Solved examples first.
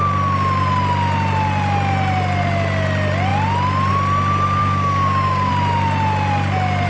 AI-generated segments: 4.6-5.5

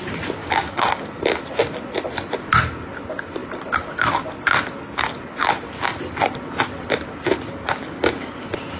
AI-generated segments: 0.4-1.0; 7.8-8.4

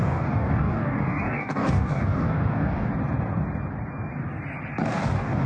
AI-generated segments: 0.0-2.9; 4.8-5.5

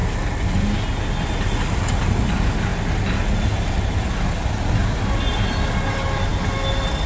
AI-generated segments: none